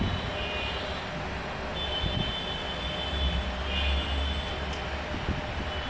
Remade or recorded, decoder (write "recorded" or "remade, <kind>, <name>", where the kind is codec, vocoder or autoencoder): recorded